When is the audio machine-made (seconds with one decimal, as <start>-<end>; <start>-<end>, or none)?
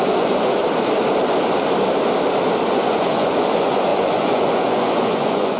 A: 0.0-0.6; 2.7-5.6